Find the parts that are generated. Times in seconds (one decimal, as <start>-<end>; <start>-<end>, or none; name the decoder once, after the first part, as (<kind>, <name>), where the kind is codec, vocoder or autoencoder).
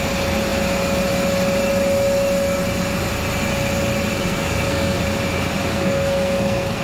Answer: 4.1-5.0 (codec, SNAC); 5.7-6.8